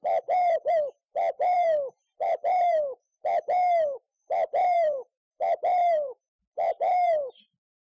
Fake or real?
fake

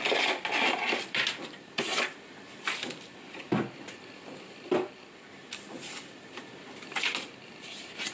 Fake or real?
fake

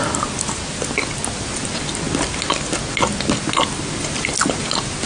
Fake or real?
real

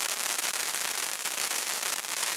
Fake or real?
fake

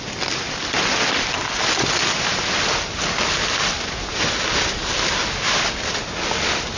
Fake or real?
real